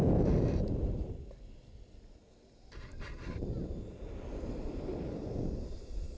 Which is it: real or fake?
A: real